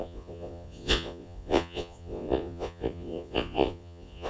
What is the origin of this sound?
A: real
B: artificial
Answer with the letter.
B